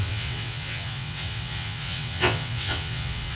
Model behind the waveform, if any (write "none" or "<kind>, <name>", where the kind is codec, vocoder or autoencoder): vocoder, WaveNeXt